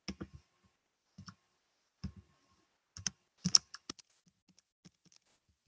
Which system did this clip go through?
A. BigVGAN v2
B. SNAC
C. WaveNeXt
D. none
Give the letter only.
D